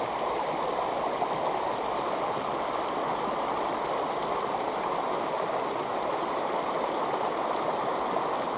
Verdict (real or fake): real